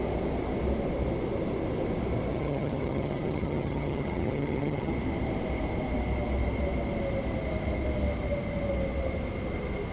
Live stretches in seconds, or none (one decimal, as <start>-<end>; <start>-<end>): 0.0-2.3; 4.9-9.9